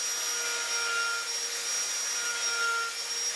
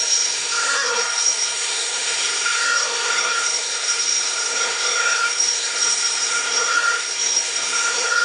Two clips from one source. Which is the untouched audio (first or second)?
first